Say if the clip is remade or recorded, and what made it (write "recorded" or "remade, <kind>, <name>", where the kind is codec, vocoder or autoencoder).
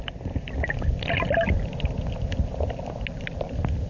recorded